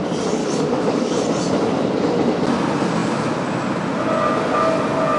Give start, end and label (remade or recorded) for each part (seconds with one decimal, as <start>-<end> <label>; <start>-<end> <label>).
0.0-0.4 recorded; 0.4-1.2 remade; 1.2-5.2 recorded